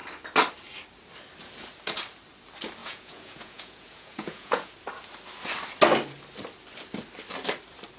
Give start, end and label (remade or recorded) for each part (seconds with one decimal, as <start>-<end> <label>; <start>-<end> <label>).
0.0-2.8 recorded; 2.8-4.7 remade; 4.7-8.0 recorded